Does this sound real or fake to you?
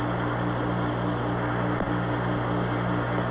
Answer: real